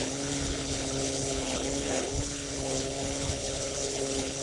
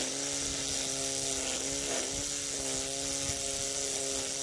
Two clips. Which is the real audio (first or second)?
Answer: second